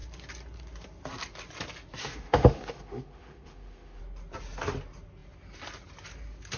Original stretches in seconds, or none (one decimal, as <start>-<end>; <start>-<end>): 0.0-2.0; 4.0-6.6

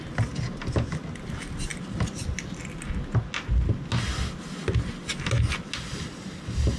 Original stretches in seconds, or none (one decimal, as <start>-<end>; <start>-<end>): 0.0-6.8

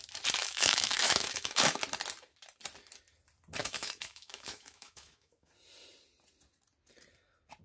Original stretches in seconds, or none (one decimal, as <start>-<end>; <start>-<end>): 0.0-0.4; 1.8-3.6; 5.5-7.6

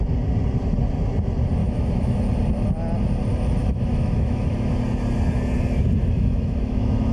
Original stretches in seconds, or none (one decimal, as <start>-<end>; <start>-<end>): 0.0-1.6; 2.2-3.6; 4.7-6.0